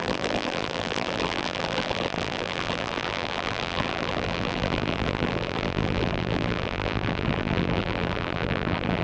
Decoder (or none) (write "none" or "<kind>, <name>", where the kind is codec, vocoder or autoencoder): vocoder, BigVGAN v2